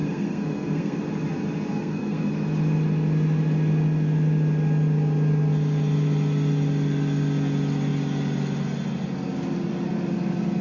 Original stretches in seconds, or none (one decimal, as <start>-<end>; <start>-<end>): 1.0-1.7; 2.3-10.6